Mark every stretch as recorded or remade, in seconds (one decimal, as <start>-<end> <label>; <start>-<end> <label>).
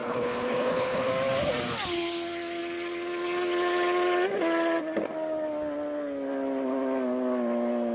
0.0-1.1 remade; 1.1-7.9 recorded